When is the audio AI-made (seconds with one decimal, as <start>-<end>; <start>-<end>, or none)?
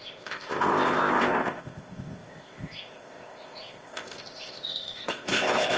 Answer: 0.0-5.8